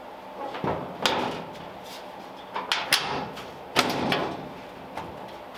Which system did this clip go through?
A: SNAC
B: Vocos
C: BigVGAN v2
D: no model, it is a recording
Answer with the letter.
D